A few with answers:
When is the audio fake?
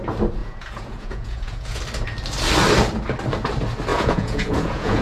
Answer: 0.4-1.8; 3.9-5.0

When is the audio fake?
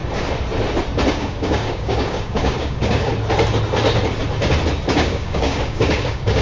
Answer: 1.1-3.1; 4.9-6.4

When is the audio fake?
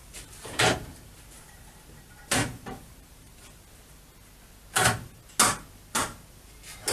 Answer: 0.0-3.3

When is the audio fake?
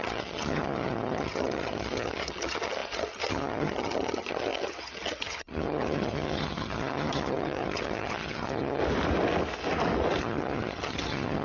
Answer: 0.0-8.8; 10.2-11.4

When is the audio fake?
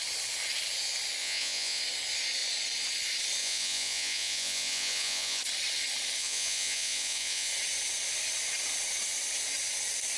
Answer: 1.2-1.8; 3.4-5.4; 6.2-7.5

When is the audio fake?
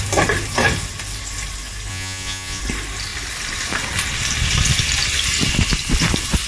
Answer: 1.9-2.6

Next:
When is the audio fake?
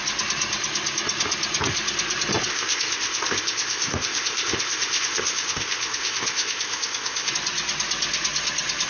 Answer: 2.5-7.3